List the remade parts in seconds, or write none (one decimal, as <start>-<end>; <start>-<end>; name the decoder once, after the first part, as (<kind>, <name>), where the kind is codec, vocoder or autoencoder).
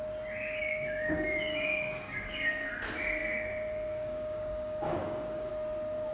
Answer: 0.6-2.7 (codec, DAC); 3.2-5.5